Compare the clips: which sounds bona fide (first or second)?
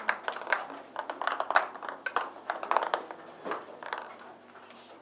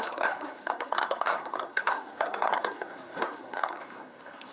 first